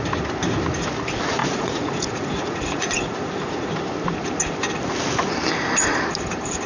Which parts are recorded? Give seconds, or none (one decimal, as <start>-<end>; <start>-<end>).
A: 0.0-1.4; 3.7-6.7